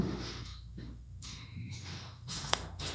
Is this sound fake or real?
fake